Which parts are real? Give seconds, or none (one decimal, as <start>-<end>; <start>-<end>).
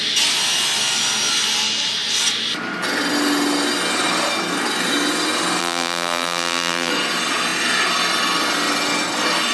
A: 0.0-5.6; 6.9-9.5